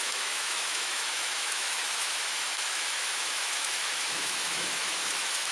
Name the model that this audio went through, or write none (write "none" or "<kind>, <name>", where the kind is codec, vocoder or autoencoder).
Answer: autoencoder, DAC-VAE